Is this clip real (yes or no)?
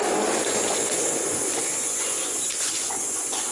no